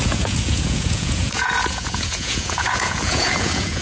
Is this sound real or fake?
fake